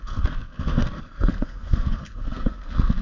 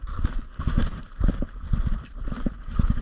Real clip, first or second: second